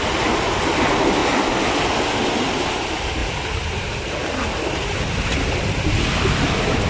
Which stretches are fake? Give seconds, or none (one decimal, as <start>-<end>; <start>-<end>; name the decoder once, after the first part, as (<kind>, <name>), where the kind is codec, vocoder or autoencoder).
0.0-1.2 (vocoder, BigVGAN v2); 2.4-6.9